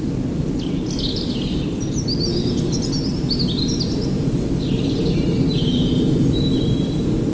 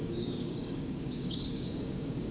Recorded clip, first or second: first